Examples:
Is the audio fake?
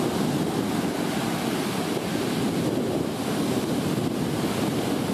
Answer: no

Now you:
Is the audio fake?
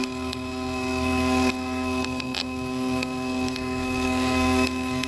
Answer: yes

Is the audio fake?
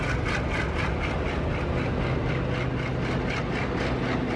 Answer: no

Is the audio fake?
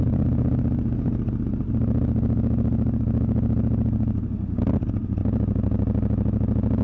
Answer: no